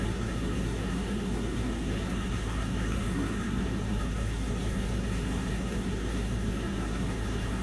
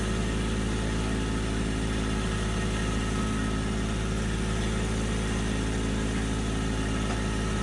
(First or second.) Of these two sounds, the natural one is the second